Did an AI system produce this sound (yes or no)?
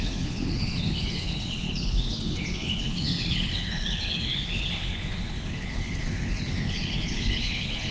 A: yes